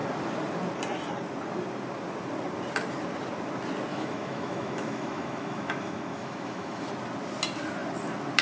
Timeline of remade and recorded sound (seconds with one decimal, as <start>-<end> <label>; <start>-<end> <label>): 0.0-3.9 recorded; 3.9-6.9 remade; 6.9-8.4 recorded